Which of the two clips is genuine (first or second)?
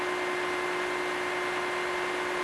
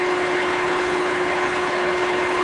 first